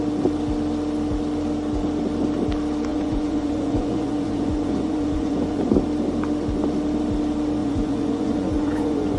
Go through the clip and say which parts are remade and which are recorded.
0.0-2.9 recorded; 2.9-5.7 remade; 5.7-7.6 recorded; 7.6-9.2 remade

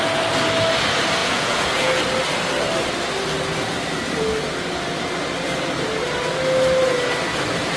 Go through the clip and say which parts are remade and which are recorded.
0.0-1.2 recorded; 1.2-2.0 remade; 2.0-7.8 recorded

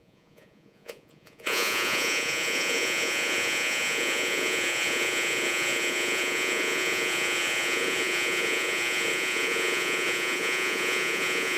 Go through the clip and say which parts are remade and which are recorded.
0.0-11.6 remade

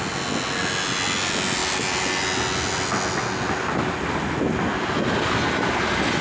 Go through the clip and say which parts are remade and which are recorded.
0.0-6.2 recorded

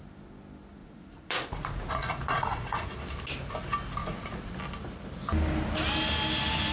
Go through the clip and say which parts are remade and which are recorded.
0.0-0.8 recorded; 0.8-2.9 remade; 2.9-4.0 recorded; 4.0-4.5 remade; 4.5-6.7 recorded